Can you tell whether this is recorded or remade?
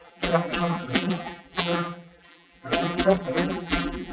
remade